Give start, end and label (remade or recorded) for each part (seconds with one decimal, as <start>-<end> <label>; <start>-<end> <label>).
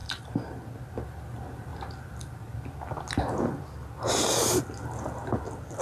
0.0-0.6 remade; 0.6-5.8 recorded